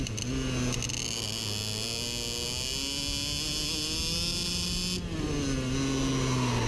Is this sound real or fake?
real